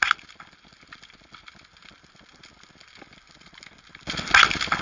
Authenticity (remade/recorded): recorded